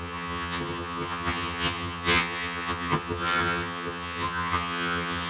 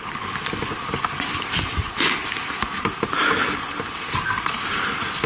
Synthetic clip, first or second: first